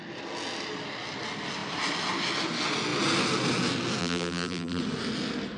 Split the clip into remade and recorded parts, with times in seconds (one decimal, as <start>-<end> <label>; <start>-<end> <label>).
0.0-4.0 recorded; 4.0-4.8 remade; 4.8-5.6 recorded